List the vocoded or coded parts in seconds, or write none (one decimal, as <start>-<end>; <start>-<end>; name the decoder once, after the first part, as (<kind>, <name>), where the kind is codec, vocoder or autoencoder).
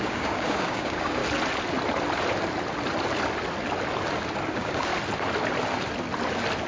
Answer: 0.0-1.2 (codec, DAC); 4.5-4.9